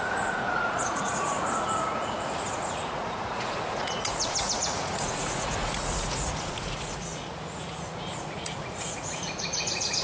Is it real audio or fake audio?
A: fake